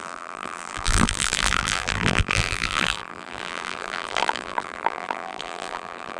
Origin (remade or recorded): remade